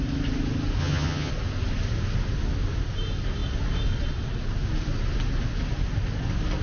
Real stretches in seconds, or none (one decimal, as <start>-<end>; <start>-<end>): 0.0-0.8; 1.3-6.6